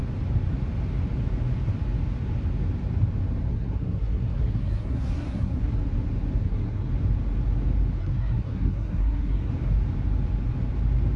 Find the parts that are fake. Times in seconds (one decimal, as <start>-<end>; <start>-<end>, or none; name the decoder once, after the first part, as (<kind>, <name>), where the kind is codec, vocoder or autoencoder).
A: 3.5-5.8 (codec, SNAC); 6.4-6.9; 8.0-9.5